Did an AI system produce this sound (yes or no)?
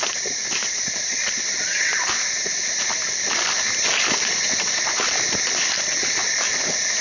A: no